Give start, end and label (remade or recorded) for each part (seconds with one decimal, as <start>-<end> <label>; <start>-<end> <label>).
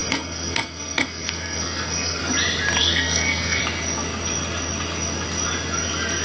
0.0-2.2 remade; 2.2-2.8 recorded; 2.8-3.6 remade; 3.6-6.2 recorded